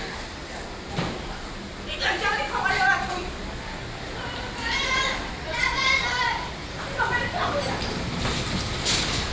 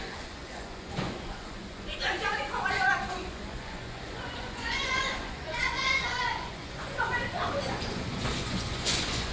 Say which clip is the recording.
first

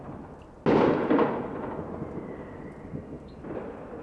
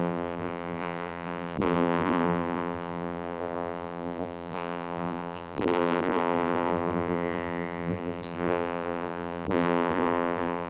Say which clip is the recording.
first